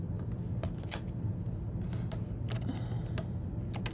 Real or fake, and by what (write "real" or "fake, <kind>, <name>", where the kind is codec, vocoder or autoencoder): real